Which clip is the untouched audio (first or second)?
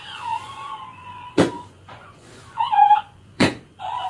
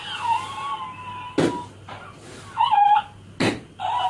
second